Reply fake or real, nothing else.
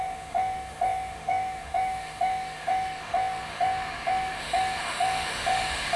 fake